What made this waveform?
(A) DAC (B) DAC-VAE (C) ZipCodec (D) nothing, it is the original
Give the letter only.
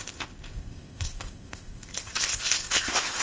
C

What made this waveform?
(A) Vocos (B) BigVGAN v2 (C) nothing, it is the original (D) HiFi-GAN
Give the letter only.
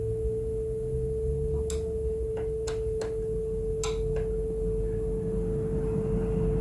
C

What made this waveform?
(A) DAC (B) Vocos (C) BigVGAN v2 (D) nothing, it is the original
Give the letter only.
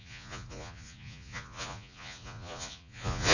B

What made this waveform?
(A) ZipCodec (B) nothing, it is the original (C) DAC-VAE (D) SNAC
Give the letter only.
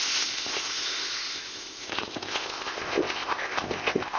A